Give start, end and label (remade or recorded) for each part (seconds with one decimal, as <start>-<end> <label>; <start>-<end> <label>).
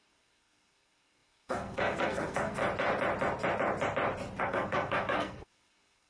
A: 0.0-2.6 remade; 2.6-4.4 recorded; 4.4-6.1 remade